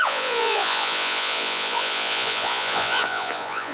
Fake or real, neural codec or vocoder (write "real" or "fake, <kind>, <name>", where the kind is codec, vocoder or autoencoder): fake, vocoder, Vocos